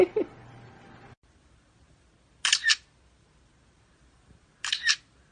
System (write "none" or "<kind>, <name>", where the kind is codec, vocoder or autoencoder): none